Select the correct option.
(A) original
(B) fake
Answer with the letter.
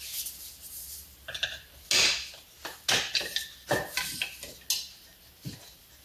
A